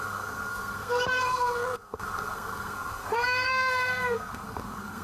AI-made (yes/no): yes